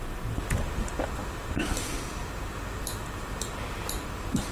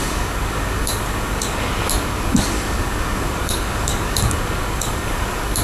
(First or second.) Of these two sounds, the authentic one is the first